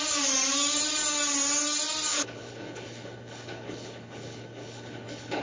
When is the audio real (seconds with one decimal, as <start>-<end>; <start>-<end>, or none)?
0.0-2.1